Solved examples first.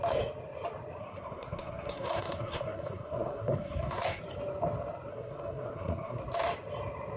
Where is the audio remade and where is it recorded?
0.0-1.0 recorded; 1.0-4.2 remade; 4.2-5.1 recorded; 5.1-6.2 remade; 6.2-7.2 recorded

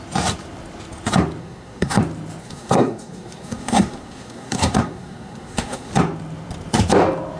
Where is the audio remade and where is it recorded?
0.0-1.4 recorded; 1.4-2.0 remade; 2.0-2.4 recorded; 2.4-5.9 remade; 5.9-7.4 recorded

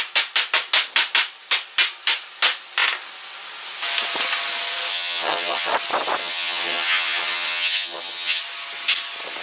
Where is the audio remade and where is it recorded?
0.0-4.9 recorded; 4.9-5.7 remade; 5.7-6.2 recorded; 6.2-8.4 remade; 8.4-9.4 recorded

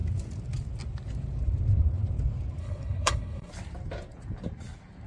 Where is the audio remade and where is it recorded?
0.0-2.6 recorded; 2.6-3.5 remade; 3.5-5.1 recorded